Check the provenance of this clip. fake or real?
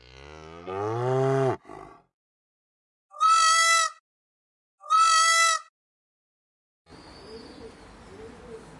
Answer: real